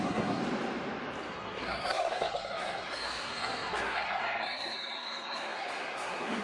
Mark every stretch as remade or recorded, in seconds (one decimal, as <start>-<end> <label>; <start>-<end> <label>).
0.0-0.4 remade; 0.4-1.3 recorded; 1.3-6.4 remade